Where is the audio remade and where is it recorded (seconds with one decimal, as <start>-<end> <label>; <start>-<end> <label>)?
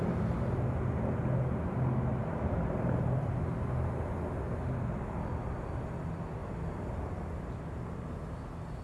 0.0-2.2 recorded; 2.2-3.9 remade; 3.9-6.4 recorded; 6.4-7.2 remade; 7.2-8.8 recorded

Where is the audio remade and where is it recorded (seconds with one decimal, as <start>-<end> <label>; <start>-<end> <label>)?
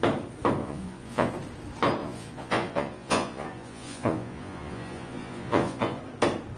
0.0-0.6 recorded; 0.6-1.3 remade; 1.3-2.0 recorded; 2.0-6.0 remade; 6.0-6.6 recorded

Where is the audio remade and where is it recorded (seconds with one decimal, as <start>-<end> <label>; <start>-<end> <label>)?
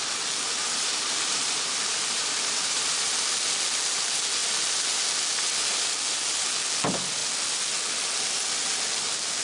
0.0-0.6 recorded; 0.6-3.2 remade; 3.2-9.4 recorded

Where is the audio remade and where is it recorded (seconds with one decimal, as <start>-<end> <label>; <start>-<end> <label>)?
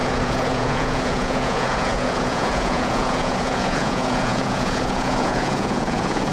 0.0-6.3 remade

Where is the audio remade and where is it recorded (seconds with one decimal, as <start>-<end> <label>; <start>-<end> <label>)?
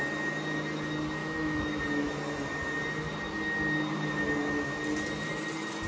0.0-1.2 recorded; 1.2-1.8 remade; 1.8-5.9 recorded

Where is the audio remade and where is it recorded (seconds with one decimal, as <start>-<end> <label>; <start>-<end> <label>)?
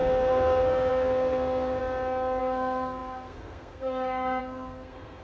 0.0-1.8 remade; 1.8-2.4 recorded; 2.4-5.2 remade